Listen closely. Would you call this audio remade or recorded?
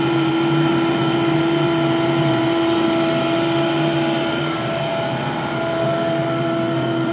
remade